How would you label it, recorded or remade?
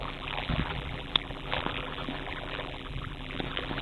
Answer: remade